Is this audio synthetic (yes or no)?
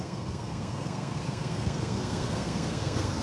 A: yes